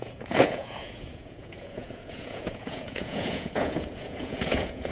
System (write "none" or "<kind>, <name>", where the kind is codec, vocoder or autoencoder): vocoder, Vocos